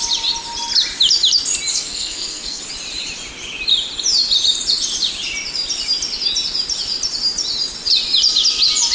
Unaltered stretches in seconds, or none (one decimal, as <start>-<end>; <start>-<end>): 0.0-1.7; 2.6-8.9